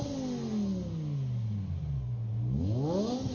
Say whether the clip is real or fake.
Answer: real